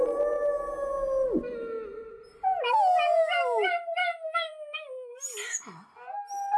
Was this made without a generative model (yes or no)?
yes